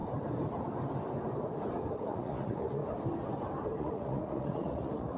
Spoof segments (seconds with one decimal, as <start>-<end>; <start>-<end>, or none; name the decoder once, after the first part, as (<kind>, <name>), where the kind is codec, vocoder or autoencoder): 1.9-2.8 (vocoder, Vocos); 3.8-5.2